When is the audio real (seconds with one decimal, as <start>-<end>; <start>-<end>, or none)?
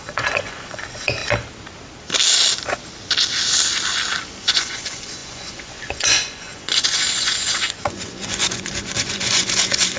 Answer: 1.2-4.4